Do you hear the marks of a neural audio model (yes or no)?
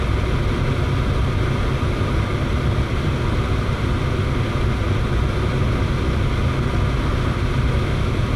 no